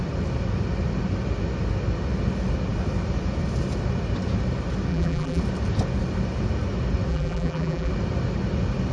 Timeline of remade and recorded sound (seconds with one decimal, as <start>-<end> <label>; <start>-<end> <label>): 0.0-4.9 recorded; 4.9-5.4 remade; 5.4-7.1 recorded; 7.1-7.9 remade; 7.9-8.9 recorded